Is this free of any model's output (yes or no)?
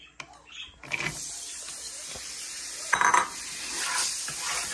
yes